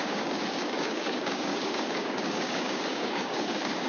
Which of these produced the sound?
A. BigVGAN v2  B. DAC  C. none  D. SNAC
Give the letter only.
B